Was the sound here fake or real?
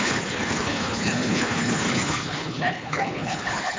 fake